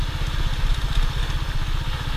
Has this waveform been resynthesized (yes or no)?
no